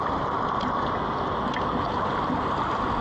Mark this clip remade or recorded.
recorded